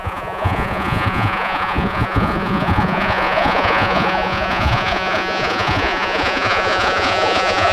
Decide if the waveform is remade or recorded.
remade